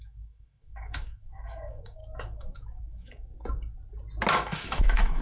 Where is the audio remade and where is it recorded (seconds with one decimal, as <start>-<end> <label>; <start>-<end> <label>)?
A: 0.0-3.3 remade; 3.3-4.3 recorded; 4.3-5.2 remade